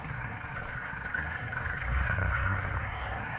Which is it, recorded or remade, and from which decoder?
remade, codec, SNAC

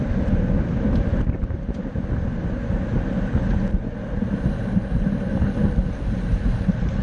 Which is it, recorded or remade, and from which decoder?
recorded